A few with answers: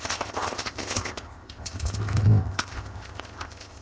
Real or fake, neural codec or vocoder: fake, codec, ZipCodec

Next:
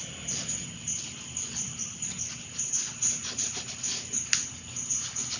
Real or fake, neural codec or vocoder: real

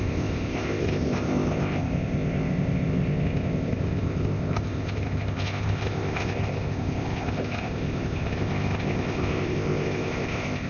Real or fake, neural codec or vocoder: fake, codec, ZipCodec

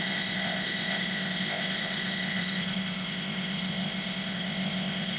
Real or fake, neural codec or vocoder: fake, codec, ZipCodec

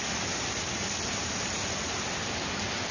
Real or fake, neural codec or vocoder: real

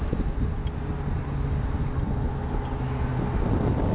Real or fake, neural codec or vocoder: real